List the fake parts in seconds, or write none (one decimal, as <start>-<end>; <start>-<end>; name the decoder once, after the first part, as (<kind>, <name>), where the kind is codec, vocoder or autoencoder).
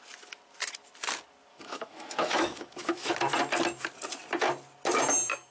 1.5-3.1 (autoencoder, DAC-VAE)